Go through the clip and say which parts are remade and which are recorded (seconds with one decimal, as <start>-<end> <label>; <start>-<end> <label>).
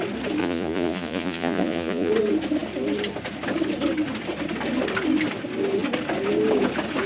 0.0-0.4 recorded; 0.4-2.1 remade; 2.1-7.1 recorded